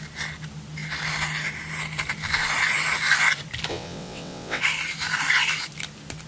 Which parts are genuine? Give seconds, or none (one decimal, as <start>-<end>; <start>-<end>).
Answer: 0.0-3.7; 4.6-6.3